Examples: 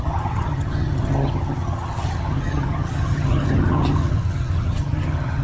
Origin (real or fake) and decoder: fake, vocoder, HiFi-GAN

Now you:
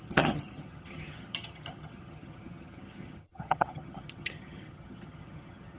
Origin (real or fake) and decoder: fake, vocoder, HiFi-GAN